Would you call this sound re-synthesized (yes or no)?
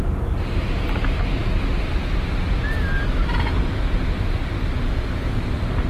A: no